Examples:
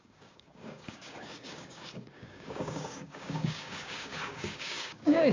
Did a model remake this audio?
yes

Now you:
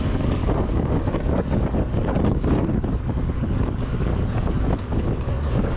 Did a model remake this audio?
yes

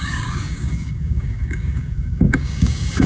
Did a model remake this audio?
yes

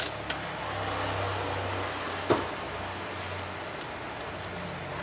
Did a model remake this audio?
no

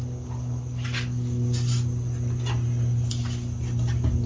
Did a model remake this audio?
no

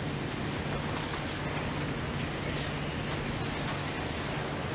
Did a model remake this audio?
no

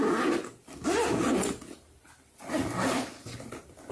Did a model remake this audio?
no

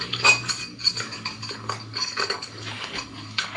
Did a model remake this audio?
yes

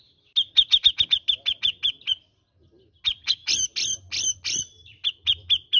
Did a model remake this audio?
no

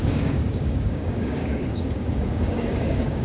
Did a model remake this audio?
yes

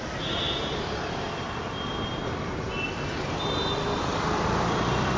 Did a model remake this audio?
no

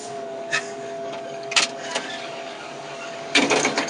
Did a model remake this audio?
yes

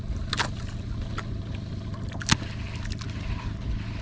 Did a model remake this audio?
no